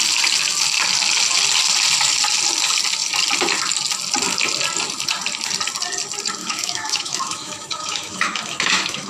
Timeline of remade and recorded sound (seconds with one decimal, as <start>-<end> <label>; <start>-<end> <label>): 0.0-6.4 recorded; 6.4-9.1 remade